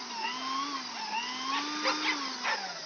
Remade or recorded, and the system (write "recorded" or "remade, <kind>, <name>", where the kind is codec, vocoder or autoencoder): recorded